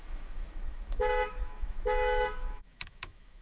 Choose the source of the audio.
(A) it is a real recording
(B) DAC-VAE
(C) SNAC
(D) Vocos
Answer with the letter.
B